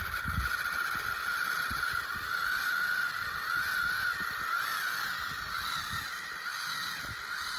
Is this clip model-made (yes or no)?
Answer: no